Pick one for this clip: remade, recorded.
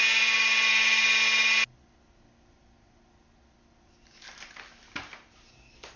recorded